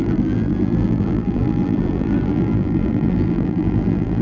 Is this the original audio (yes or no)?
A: no